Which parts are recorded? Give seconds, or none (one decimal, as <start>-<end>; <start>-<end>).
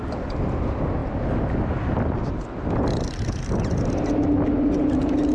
0.0-5.3